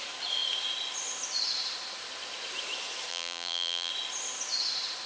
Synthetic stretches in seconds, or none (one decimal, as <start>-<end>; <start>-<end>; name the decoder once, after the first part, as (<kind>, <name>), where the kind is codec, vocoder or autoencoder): 3.1-3.9 (vocoder, BigVGAN v2)